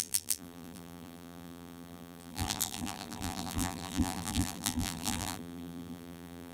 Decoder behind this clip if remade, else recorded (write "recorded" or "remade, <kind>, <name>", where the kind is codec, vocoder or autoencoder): remade, vocoder, BigVGAN v2